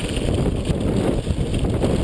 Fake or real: real